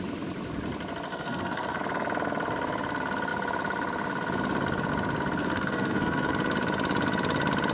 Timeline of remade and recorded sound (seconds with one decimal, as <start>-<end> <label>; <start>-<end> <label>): 0.0-1.1 recorded; 1.1-1.8 remade; 1.8-5.4 recorded; 5.4-6.3 remade; 6.3-7.7 recorded